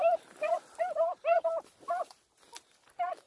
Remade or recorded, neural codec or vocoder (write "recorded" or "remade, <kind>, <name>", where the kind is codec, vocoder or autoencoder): recorded